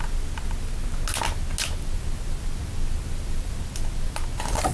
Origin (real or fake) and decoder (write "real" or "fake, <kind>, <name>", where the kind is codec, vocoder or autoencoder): real